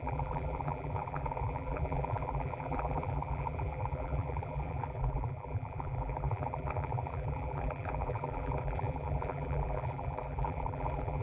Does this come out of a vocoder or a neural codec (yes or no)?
yes